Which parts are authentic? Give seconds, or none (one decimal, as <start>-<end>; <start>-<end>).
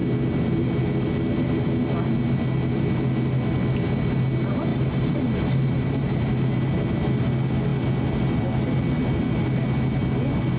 0.0-4.7; 6.2-10.6